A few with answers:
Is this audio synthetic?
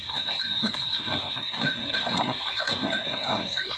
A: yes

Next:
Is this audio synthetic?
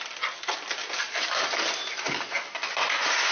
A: no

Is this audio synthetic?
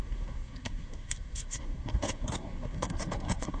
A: yes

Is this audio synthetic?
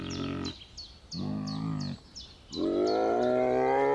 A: no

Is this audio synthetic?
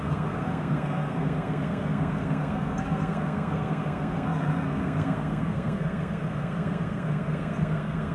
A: yes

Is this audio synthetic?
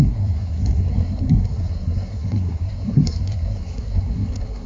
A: yes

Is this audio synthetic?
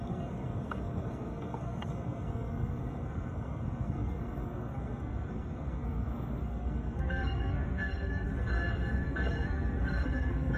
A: yes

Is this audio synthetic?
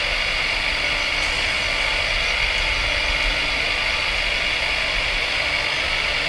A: no